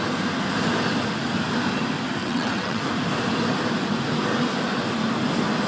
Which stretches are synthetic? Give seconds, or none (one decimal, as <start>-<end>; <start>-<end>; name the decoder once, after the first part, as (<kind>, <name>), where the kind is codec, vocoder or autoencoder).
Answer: 2.2-2.8 (vocoder, WaveNeXt)